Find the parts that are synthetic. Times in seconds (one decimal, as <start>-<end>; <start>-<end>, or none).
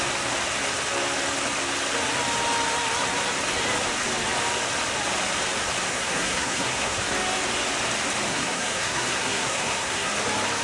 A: 5.9-7.0; 8.3-10.1